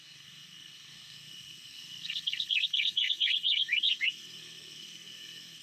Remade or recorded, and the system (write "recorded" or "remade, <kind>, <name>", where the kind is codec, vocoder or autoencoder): remade, codec, SNAC